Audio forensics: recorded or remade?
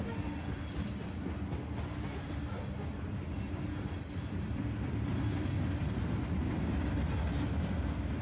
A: recorded